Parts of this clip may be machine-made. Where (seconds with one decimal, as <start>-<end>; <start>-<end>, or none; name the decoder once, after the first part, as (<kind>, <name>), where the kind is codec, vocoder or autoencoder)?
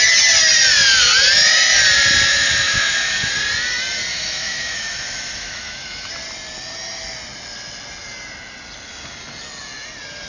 2.3-3.3 (autoencoder, DAC-VAE); 4.1-6.1